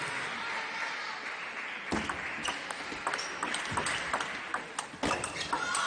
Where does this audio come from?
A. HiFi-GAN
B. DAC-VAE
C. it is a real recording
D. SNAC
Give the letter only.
C